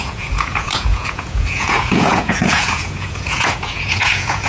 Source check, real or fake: fake